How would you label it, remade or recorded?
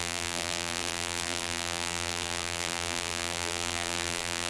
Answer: remade